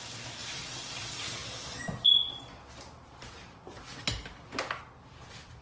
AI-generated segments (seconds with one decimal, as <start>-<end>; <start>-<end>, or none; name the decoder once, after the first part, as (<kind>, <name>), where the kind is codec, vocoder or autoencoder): none